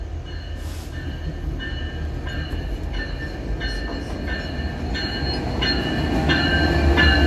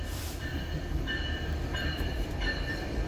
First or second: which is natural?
first